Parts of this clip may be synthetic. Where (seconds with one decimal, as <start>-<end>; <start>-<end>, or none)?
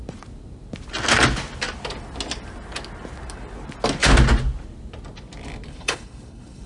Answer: 5.7-6.7